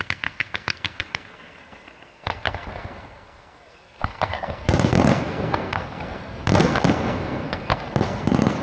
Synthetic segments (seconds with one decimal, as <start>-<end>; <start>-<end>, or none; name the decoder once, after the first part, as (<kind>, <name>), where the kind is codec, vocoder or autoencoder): 0.0-8.6 (codec, SNAC)